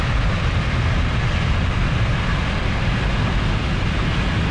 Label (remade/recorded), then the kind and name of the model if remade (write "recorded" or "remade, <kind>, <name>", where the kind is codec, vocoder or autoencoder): recorded